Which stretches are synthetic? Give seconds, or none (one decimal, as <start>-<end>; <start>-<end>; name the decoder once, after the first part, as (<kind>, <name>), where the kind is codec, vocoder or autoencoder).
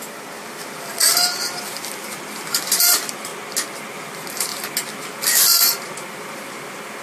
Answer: 0.0-3.3 (vocoder, BigVGAN v2); 3.9-4.5; 5.1-7.0